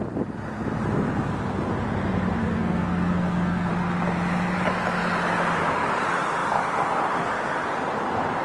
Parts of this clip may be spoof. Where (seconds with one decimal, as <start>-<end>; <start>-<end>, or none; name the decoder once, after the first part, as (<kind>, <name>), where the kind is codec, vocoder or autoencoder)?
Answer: 2.4-3.7 (codec, SNAC)